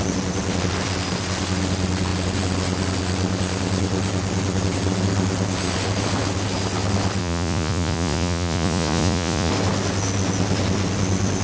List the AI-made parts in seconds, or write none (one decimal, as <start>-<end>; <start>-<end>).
7.2-9.5